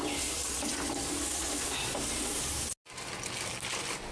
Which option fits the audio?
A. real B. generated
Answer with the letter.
A